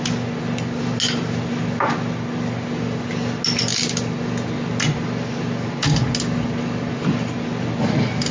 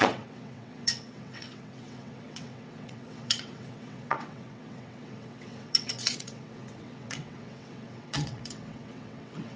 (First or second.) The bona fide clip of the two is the first